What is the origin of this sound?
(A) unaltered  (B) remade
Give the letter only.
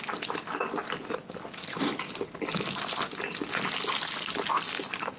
A